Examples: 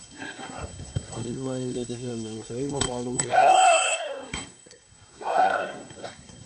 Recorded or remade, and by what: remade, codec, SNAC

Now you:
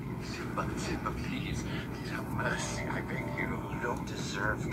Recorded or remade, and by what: recorded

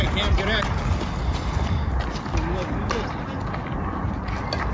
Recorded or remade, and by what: recorded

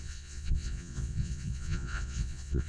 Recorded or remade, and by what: remade, vocoder, Vocos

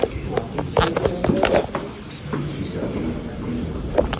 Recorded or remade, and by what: recorded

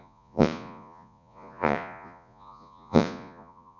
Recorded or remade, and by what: remade, vocoder, Vocos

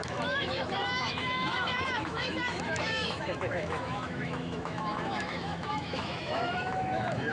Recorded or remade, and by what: remade, autoencoder, DAC-VAE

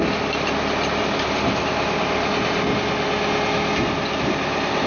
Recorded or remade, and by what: recorded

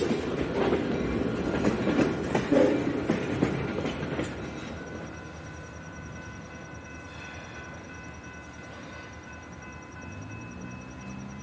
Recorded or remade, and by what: recorded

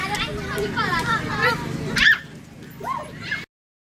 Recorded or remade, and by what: recorded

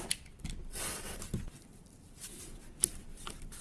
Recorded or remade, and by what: remade, vocoder, BigVGAN v2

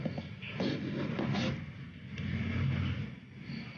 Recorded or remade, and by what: recorded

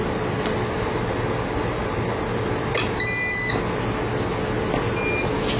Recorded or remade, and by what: recorded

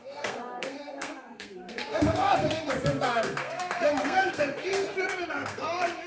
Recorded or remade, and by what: remade, codec, SNAC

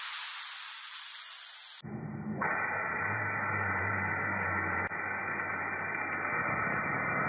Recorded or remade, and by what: recorded